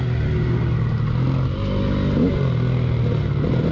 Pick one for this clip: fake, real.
real